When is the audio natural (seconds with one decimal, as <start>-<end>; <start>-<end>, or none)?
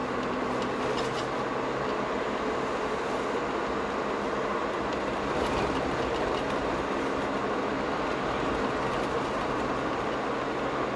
0.0-11.0